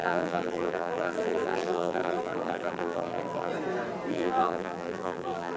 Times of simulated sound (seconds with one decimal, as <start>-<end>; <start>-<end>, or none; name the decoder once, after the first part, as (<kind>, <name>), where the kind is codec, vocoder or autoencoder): 0.0-3.5 (vocoder, BigVGAN v2); 4.1-5.6